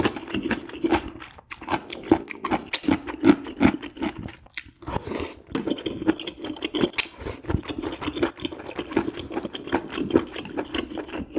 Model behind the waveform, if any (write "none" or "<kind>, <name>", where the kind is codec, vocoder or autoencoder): none